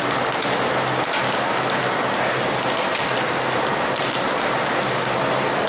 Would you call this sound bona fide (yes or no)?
yes